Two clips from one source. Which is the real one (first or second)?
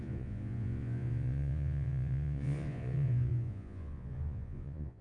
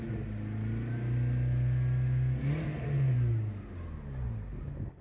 second